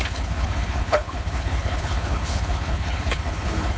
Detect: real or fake fake